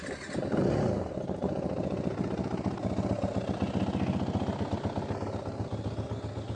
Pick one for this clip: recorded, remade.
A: recorded